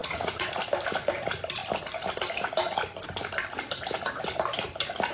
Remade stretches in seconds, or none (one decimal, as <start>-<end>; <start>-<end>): 0.0-0.6